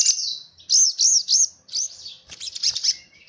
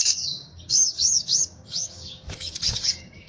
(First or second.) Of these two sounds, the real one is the first